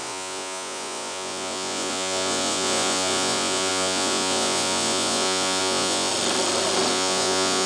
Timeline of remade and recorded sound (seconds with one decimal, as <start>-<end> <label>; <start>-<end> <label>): 0.0-6.1 remade; 6.1-6.9 recorded; 6.9-7.7 remade

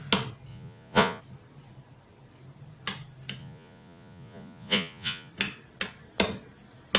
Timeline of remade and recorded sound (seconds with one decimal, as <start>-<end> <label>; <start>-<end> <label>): 0.0-0.5 recorded; 0.5-1.2 remade; 1.2-3.4 recorded; 3.4-5.3 remade; 5.3-7.0 recorded

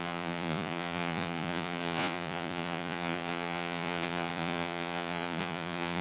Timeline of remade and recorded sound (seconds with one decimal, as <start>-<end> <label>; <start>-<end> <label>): 0.0-6.0 remade

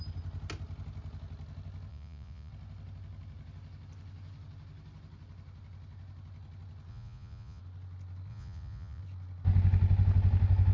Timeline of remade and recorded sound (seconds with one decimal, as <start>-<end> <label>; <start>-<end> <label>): 0.0-1.9 recorded; 1.9-2.5 remade; 2.5-6.9 recorded; 6.9-7.6 remade; 7.6-8.3 recorded; 8.3-9.0 remade; 9.0-10.7 recorded